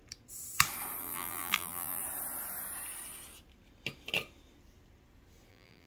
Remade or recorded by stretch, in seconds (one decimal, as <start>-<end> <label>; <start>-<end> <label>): 0.0-1.0 recorded; 1.0-2.0 remade; 2.0-5.5 recorded; 5.5-5.9 remade